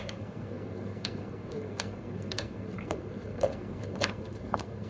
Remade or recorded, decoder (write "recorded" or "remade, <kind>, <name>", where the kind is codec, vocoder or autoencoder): remade, codec, SNAC